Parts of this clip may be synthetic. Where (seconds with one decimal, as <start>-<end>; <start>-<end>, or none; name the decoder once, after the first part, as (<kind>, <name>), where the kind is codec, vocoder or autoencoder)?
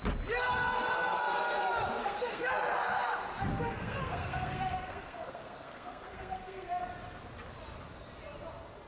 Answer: 2.0-2.5 (codec, SNAC); 3.5-6.9